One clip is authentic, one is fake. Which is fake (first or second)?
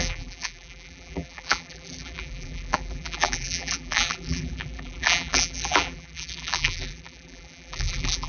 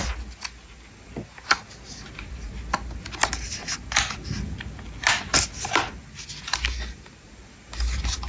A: first